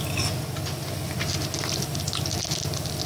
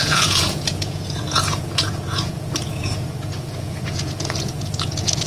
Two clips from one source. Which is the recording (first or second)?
first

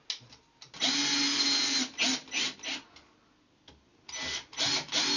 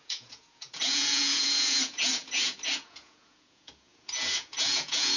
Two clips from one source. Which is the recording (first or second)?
first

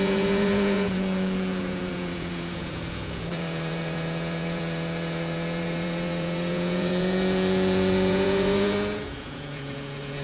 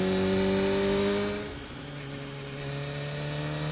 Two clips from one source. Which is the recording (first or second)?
second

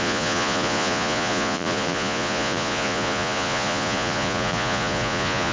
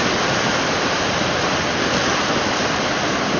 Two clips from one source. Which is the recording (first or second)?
second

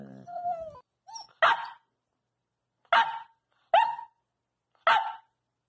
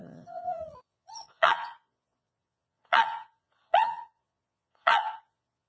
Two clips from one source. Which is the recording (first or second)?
first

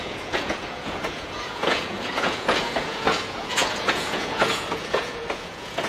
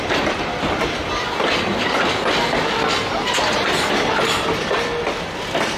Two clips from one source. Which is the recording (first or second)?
second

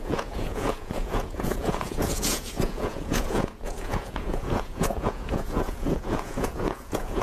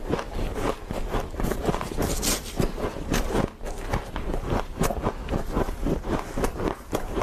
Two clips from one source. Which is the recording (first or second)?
second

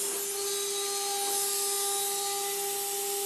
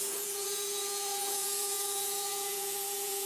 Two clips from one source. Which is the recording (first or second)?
first